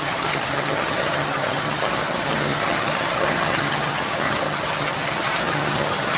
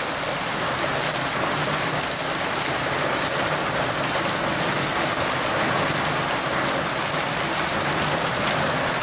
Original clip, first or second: second